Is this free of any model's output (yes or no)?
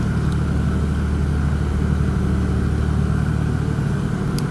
yes